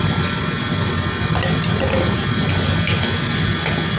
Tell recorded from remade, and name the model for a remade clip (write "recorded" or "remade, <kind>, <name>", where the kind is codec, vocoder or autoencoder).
recorded